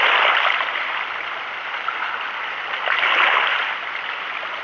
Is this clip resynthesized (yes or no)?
no